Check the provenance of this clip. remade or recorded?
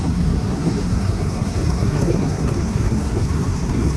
remade